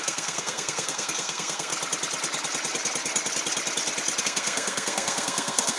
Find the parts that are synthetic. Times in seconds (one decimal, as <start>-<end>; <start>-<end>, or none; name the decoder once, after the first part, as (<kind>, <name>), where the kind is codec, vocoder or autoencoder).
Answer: 0.0-1.7 (codec, SNAC); 4.2-5.8